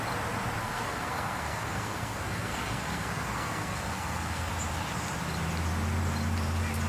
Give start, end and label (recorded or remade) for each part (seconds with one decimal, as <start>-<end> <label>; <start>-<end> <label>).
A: 0.0-0.6 recorded; 0.6-4.5 remade; 4.5-6.9 recorded